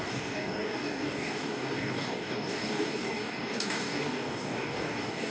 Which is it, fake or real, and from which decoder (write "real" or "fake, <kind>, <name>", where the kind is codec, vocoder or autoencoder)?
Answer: fake, codec, DAC